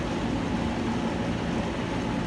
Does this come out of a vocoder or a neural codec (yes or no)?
no